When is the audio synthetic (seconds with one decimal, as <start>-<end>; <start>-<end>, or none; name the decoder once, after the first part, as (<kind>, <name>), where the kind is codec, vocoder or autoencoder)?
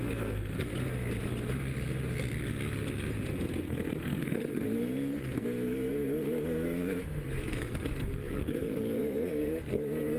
0.0-0.7 (codec, SNAC); 3.6-10.2